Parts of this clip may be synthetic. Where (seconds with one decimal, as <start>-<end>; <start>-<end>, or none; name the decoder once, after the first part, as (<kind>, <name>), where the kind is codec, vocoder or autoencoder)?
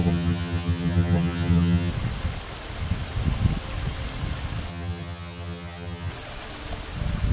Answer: 0.0-1.9 (vocoder, HiFi-GAN); 4.7-6.1